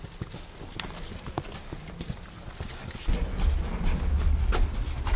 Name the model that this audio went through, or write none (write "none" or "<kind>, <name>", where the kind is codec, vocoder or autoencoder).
none